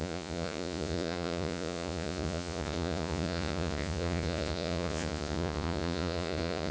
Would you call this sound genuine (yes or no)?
no